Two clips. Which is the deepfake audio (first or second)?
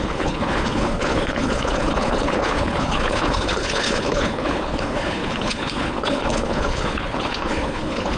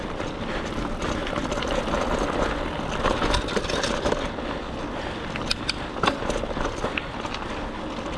first